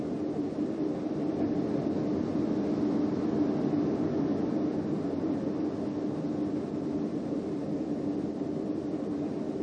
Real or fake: real